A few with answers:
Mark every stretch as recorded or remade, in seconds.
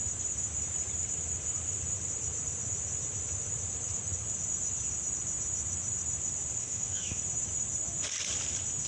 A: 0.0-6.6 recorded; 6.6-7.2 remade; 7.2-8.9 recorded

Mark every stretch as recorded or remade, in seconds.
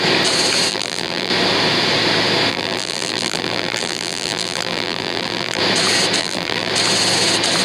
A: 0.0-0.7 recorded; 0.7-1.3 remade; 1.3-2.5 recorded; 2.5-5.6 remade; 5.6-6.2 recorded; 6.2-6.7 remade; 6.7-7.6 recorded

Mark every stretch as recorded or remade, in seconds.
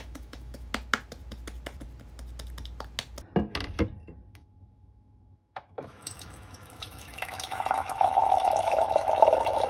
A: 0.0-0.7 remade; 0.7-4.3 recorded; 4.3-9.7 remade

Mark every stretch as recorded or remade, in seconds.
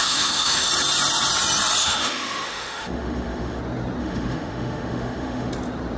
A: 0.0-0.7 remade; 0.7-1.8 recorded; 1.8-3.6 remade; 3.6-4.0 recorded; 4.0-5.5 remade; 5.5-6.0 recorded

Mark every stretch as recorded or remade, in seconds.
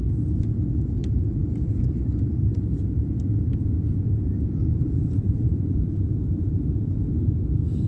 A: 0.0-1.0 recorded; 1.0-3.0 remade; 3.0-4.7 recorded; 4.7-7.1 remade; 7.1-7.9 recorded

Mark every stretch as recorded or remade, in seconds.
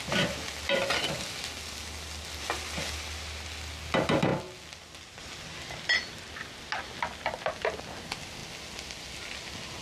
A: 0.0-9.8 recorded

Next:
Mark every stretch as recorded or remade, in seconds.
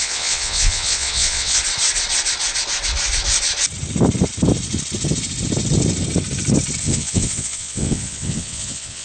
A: 0.0-1.6 remade; 1.6-6.8 recorded; 6.8-9.0 remade